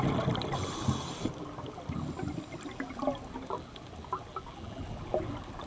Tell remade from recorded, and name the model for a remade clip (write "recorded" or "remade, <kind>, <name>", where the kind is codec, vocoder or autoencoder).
recorded